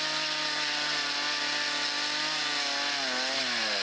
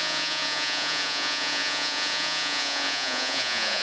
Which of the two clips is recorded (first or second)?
first